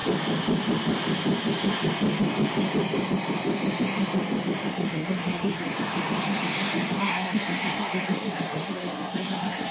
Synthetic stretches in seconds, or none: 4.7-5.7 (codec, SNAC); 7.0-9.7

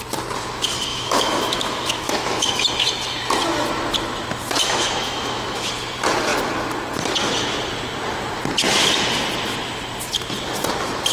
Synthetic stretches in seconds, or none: 0.9-2.6 (autoencoder, DAC-VAE); 4.6-5.7

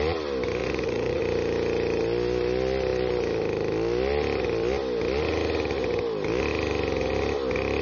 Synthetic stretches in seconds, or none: 0.6-1.2 (vocoder, Vocos)

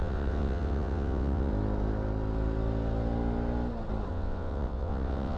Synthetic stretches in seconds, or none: 0.0-1.5 (vocoder, WaveNeXt); 4.1-5.4

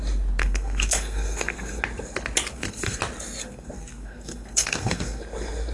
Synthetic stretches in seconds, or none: 0.4-1.8 (codec, SNAC); 2.5-3.0; 3.4-5.2

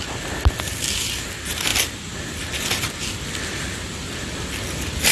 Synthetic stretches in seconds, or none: none

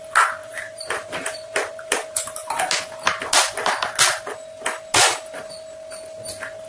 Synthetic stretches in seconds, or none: 0.4-2.5 (vocoder, BigVGAN v2)